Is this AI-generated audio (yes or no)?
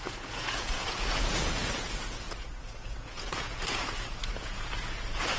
yes